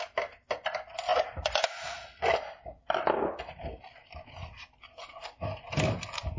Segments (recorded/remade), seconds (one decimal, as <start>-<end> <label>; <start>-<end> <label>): 0.0-6.4 recorded